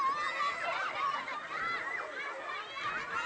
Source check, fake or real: real